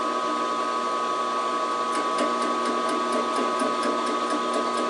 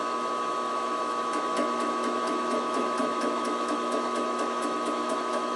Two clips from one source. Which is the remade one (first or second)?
second